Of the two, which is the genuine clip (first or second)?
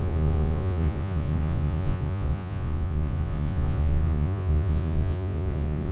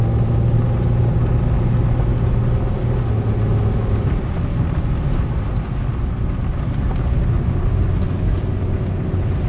second